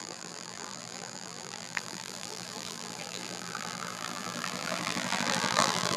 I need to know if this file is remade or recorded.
remade